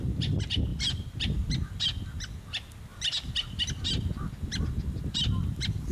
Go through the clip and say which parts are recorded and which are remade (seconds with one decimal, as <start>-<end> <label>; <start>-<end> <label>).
0.0-0.7 recorded; 0.7-1.5 remade; 1.5-2.9 recorded; 2.9-3.6 remade; 3.6-5.9 recorded